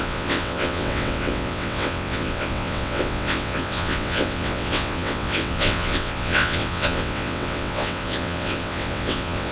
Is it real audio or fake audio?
fake